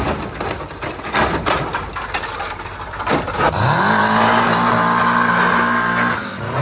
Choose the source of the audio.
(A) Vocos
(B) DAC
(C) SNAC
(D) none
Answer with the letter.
D